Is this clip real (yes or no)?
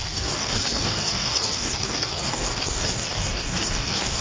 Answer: no